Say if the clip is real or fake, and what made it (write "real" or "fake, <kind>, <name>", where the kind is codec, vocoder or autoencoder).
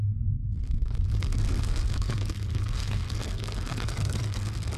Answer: fake, codec, SNAC